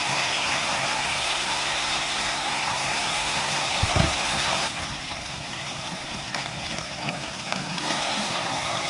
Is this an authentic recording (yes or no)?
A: no